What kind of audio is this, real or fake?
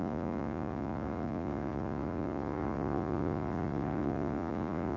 fake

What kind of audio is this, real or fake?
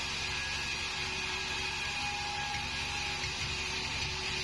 real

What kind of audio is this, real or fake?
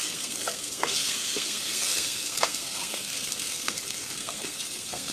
fake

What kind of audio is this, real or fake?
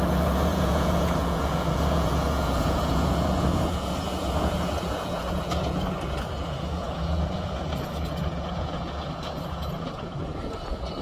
fake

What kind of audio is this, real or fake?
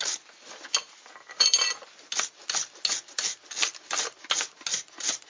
real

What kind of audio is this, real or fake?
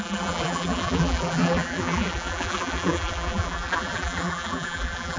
fake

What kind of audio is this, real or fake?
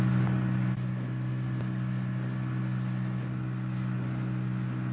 real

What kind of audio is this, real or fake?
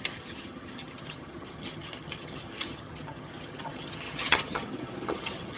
fake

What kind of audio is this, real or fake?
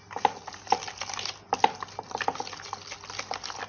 real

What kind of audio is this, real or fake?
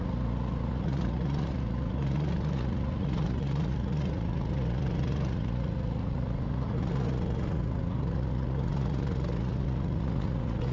fake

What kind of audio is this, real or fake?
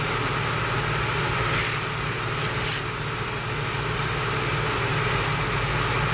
real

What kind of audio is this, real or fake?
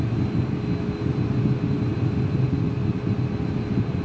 real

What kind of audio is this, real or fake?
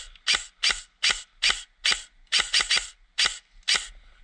real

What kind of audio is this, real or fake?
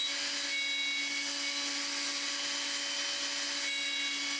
real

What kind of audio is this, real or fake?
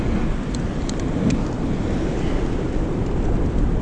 real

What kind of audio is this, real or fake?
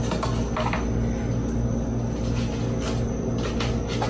real